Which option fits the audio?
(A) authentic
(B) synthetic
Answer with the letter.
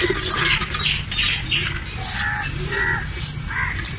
A